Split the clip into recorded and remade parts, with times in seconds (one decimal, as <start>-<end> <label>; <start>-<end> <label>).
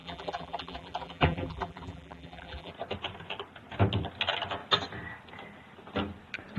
0.0-2.7 remade; 2.7-6.6 recorded